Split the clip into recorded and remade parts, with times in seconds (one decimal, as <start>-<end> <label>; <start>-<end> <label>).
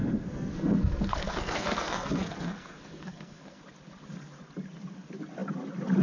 0.0-3.6 remade; 3.6-6.0 recorded